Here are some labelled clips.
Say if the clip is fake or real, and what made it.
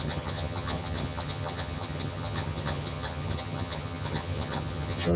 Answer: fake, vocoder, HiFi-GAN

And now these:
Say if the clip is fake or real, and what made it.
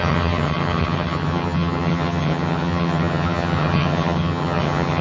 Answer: fake, vocoder, HiFi-GAN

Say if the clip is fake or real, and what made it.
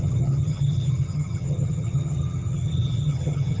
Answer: fake, vocoder, HiFi-GAN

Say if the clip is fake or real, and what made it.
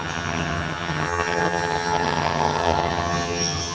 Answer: fake, vocoder, HiFi-GAN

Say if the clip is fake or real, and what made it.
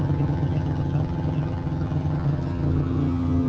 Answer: fake, vocoder, HiFi-GAN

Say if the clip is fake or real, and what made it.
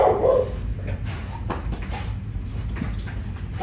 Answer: real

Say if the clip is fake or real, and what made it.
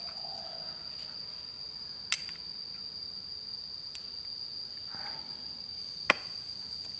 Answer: real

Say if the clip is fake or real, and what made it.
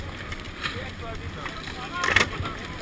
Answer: real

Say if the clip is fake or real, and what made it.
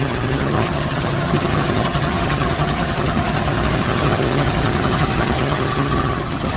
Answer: fake, vocoder, HiFi-GAN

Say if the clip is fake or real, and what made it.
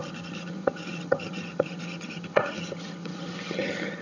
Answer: fake, vocoder, HiFi-GAN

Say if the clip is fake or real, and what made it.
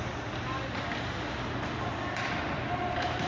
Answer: real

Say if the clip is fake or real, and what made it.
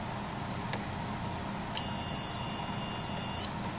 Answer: real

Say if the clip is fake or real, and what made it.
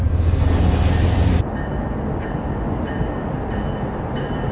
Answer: real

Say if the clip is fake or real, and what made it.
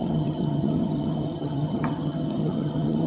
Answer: fake, vocoder, HiFi-GAN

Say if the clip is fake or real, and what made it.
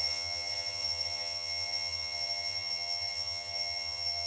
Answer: fake, vocoder, HiFi-GAN